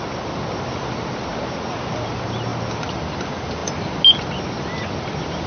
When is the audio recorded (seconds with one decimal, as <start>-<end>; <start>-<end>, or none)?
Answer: 0.0-5.5